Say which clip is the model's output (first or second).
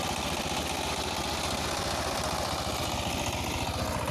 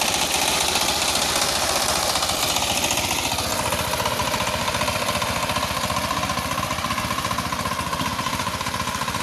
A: second